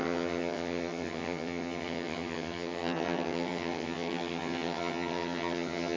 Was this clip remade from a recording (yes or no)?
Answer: yes